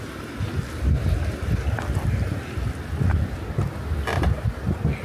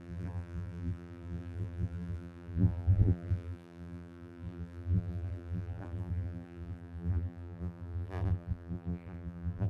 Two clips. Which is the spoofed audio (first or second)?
second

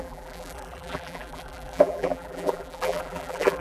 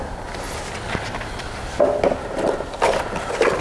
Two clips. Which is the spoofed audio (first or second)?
first